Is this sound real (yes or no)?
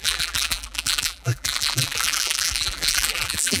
no